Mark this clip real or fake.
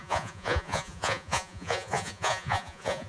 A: fake